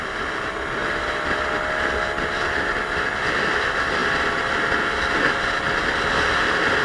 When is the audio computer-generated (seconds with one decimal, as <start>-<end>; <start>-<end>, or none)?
none